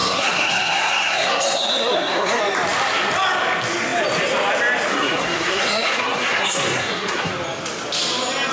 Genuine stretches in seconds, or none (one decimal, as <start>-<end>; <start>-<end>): 2.4-4.9; 7.3-8.5